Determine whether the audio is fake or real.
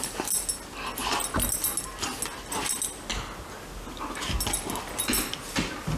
real